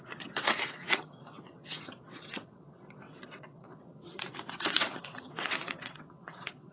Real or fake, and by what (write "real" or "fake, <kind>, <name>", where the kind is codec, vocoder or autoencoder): fake, vocoder, WaveNeXt